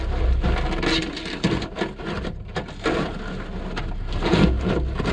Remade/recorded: recorded